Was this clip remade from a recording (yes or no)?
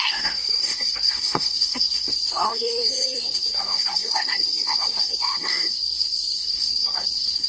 yes